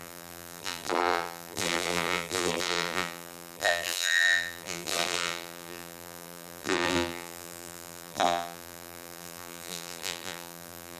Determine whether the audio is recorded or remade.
remade